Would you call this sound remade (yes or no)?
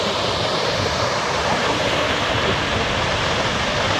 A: yes